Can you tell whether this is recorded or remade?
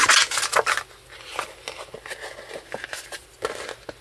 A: recorded